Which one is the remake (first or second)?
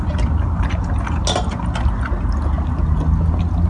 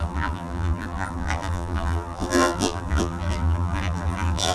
second